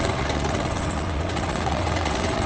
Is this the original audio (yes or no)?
no